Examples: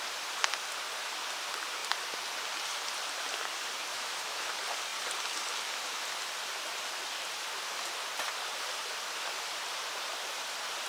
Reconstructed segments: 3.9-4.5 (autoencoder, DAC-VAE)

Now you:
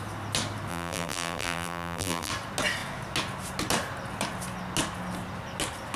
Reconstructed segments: 0.7-2.3 (vocoder, BigVGAN v2)

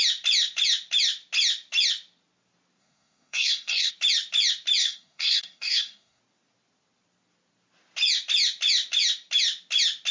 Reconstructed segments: 2.8-3.9 (codec, SNAC); 4.8-6.2

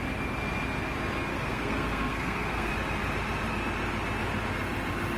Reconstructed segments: 1.3-2.7 (codec, SNAC)

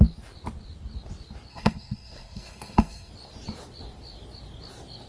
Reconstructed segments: 1.5-3.1 (codec, SNAC)